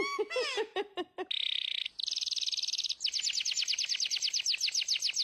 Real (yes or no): yes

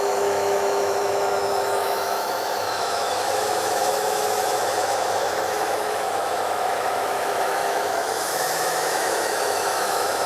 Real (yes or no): no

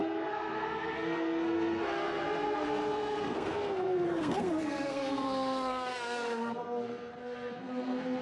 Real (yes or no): no